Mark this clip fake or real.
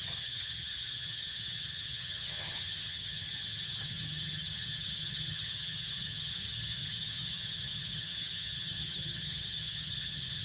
fake